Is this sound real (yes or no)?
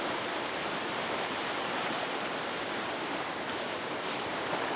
no